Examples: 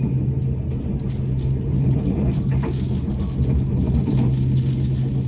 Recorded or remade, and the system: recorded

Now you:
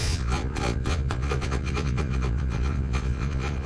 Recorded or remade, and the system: remade, vocoder, Vocos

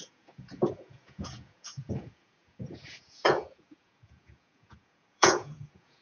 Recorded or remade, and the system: remade, vocoder, Vocos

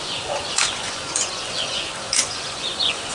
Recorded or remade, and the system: remade, vocoder, Vocos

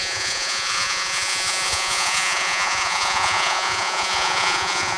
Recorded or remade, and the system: remade, vocoder, Vocos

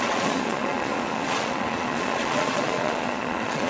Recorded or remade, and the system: remade, vocoder, Vocos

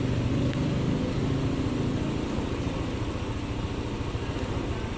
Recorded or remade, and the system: recorded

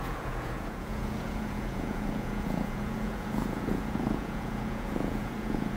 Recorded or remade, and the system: remade, vocoder, Vocos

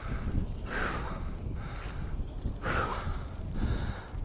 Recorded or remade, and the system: recorded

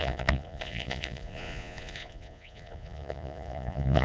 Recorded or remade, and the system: remade, vocoder, Vocos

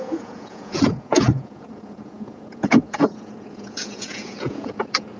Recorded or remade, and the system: remade, vocoder, Vocos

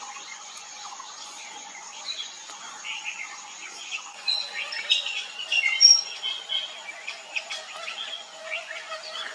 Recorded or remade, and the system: remade, vocoder, Vocos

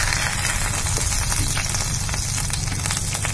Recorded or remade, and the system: recorded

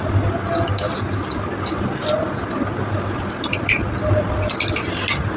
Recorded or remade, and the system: recorded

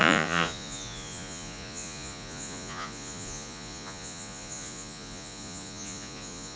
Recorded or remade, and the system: remade, vocoder, Vocos